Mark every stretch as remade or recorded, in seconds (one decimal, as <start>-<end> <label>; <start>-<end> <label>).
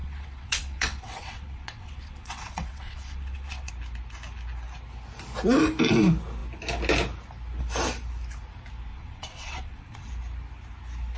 0.0-3.7 remade; 3.7-8.9 recorded; 8.9-10.1 remade; 10.1-11.2 recorded